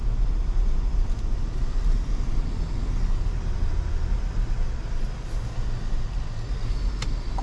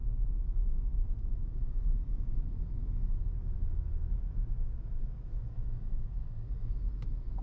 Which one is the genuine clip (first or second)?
first